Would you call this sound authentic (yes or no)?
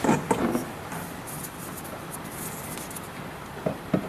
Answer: yes